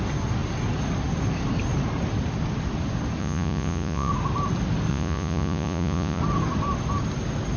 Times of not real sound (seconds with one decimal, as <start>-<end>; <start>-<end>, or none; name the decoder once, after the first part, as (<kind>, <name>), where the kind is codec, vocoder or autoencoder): 3.2-4.1 (vocoder, Vocos); 4.9-6.2